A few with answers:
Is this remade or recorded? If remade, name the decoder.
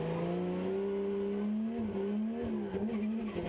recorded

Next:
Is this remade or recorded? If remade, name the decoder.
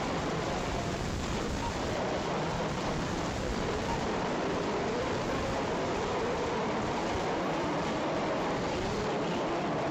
remade, vocoder, BigVGAN v2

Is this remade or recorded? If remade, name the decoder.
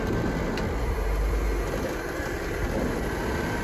recorded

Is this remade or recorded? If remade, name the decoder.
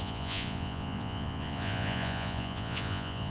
remade, vocoder, Vocos